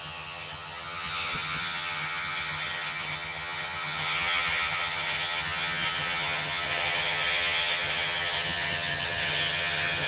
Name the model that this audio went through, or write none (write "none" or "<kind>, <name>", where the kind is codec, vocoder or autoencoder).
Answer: vocoder, HiFi-GAN